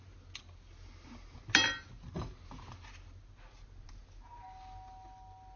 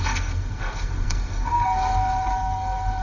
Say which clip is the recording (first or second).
first